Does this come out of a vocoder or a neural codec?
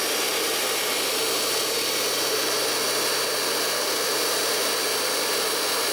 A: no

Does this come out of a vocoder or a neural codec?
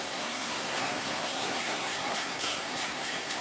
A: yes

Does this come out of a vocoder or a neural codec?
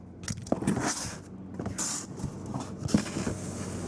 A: no